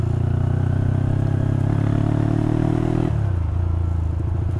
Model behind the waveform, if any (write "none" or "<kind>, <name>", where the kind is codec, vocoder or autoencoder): none